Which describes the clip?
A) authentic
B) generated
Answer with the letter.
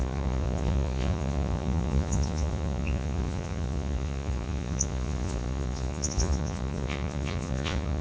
B